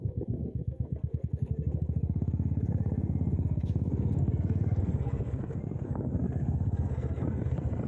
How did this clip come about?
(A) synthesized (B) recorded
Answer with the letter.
A